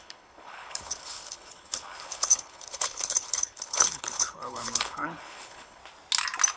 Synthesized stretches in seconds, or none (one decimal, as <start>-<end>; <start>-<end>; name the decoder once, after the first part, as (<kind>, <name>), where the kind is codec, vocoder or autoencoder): 0.0-5.8 (codec, HILCodec)